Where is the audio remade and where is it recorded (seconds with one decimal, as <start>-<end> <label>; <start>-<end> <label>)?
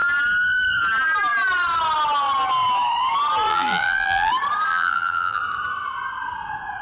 0.0-3.5 recorded; 3.5-4.3 remade; 4.3-4.7 recorded; 4.7-5.4 remade; 5.4-6.8 recorded